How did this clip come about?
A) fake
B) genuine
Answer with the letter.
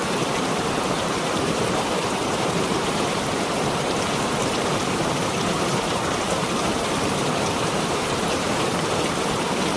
A